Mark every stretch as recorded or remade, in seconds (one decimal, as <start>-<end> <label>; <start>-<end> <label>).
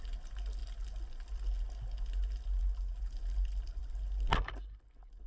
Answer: 0.0-5.3 recorded